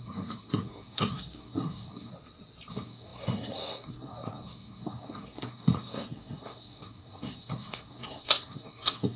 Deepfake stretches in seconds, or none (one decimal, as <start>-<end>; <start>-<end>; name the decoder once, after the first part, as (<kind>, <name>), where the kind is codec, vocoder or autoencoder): 0.0-2.1 (codec, SNAC); 2.7-9.2